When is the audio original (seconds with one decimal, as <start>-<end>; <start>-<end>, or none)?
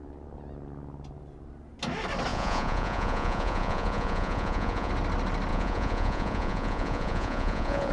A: 0.0-2.3; 4.9-5.5